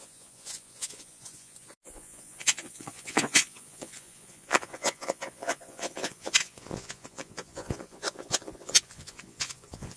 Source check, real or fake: fake